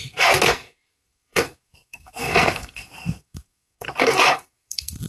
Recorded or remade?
remade